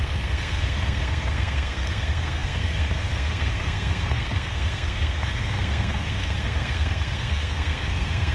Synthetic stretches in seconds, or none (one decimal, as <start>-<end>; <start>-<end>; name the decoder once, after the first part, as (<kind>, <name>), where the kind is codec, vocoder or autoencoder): 0.0-8.3 (codec, SNAC)